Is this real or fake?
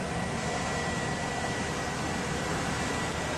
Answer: real